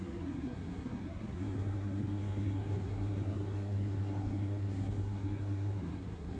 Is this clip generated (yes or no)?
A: yes